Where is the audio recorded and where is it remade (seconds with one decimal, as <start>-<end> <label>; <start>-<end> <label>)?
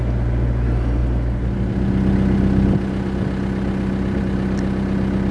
0.0-5.3 recorded